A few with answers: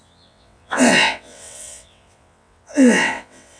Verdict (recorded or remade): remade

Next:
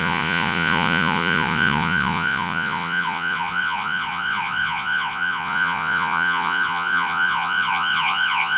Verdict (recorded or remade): remade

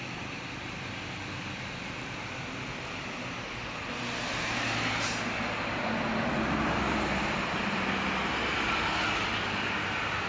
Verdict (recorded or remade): recorded